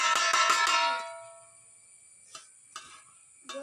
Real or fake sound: real